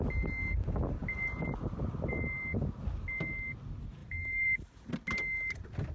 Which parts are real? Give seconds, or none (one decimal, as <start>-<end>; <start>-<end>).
0.0-4.0; 4.9-5.9